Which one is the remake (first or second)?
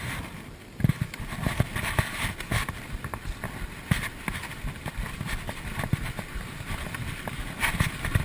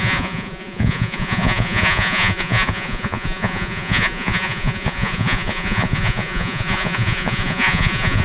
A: second